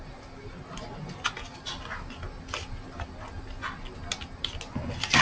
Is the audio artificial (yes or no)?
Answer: no